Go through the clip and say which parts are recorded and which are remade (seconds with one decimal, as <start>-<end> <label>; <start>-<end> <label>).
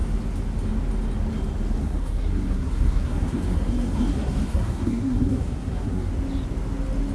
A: 0.0-1.8 recorded; 1.8-6.1 remade; 6.1-7.1 recorded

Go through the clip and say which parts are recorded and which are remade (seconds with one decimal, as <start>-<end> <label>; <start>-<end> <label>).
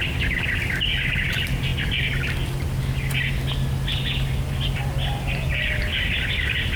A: 0.0-6.8 recorded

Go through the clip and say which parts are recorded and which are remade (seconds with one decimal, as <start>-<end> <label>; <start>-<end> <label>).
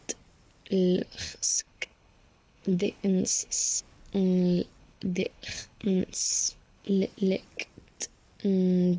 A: 0.0-1.0 recorded; 1.0-3.8 remade; 3.8-4.8 recorded; 4.8-6.9 remade; 6.9-9.0 recorded